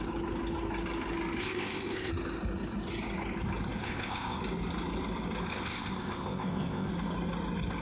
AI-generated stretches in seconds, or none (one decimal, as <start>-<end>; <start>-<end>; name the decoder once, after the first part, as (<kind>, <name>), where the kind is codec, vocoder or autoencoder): 1.4-2.1 (codec, ZipCodec); 3.8-4.4; 5.5-6.9